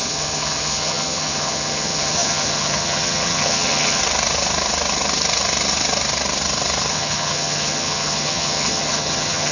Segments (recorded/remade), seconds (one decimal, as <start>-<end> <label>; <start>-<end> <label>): 0.0-4.0 remade; 4.0-6.9 recorded; 6.9-9.5 remade